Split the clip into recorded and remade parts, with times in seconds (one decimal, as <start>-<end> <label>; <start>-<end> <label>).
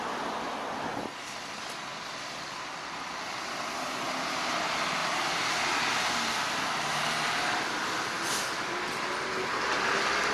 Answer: 0.0-1.9 recorded; 1.9-3.2 remade; 3.2-10.3 recorded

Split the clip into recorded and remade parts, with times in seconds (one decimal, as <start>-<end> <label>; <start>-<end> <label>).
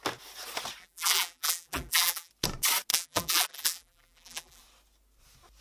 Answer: 0.0-0.8 recorded; 0.8-2.3 remade; 2.3-2.9 recorded; 2.9-4.6 remade; 4.6-5.6 recorded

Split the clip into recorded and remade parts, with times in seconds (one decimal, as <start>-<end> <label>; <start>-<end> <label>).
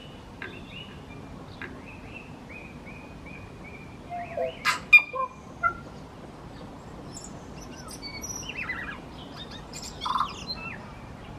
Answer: 0.0-1.0 remade; 1.0-8.1 recorded; 8.1-10.1 remade; 10.1-11.4 recorded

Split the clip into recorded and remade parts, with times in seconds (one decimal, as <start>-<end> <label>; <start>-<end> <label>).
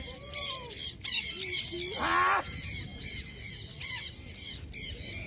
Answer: 0.0-2.9 recorded; 2.9-3.5 remade; 3.5-5.3 recorded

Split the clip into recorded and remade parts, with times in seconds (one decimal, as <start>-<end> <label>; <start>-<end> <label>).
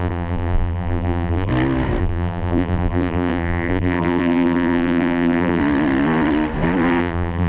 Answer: 0.0-1.5 remade; 1.5-2.0 recorded; 2.0-5.6 remade; 5.6-7.0 recorded; 7.0-7.5 remade